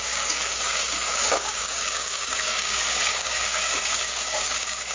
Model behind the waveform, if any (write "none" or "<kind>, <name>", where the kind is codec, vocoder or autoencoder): codec, DAC